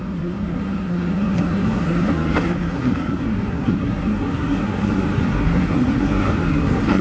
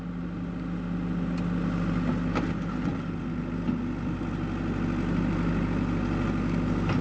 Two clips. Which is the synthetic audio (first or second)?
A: first